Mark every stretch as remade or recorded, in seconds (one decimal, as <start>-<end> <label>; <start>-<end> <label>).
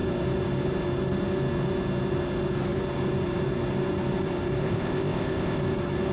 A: 0.0-4.6 recorded; 4.6-5.6 remade; 5.6-6.1 recorded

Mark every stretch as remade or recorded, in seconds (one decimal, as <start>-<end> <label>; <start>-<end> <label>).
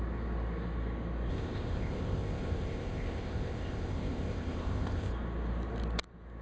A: 0.0-1.3 recorded; 1.3-5.1 remade; 5.1-6.4 recorded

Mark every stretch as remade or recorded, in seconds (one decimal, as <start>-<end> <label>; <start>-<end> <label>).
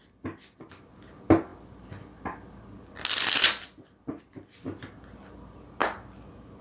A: 0.0-6.6 recorded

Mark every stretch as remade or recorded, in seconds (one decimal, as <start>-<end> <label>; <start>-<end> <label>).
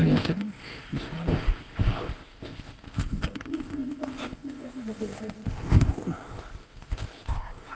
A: 0.0-7.7 remade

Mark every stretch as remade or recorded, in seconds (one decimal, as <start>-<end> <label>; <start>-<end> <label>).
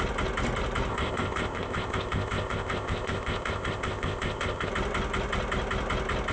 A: 0.0-0.9 recorded; 0.9-4.7 remade; 4.7-6.3 recorded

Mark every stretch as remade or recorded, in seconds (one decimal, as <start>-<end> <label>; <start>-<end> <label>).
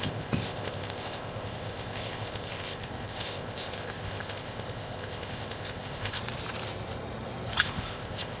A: 0.0-6.2 remade; 6.2-7.6 recorded; 7.6-8.4 remade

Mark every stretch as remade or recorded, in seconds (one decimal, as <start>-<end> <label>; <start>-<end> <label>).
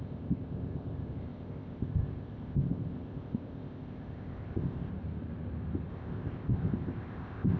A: 0.0-4.9 remade; 4.9-5.9 recorded; 5.9-7.6 remade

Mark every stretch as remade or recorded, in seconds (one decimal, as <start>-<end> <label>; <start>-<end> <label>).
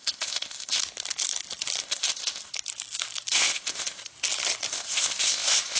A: 0.0-0.8 remade; 0.8-1.8 recorded; 1.8-2.5 remade; 2.5-3.3 recorded; 3.3-4.0 remade; 4.0-4.7 recorded; 4.7-5.8 remade